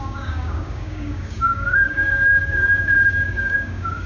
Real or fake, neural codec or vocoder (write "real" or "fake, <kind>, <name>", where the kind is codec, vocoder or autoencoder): fake, codec, DAC